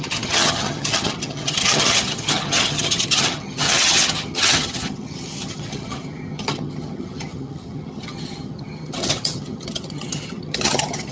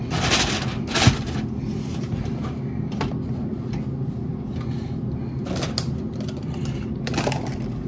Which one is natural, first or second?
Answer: second